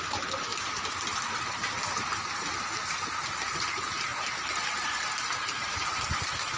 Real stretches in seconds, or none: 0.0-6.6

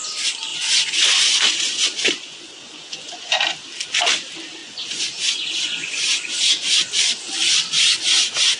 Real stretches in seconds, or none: 0.0-0.5; 3.3-4.6; 6.9-8.6

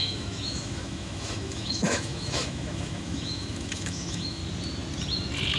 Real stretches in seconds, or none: 4.4-5.6

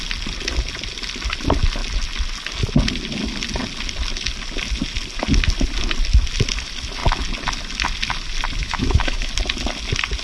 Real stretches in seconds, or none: 0.0-8.6; 9.3-10.2

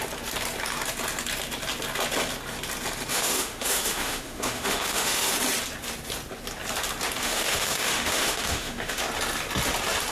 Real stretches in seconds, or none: 0.0-3.1; 5.3-7.2; 9.0-10.1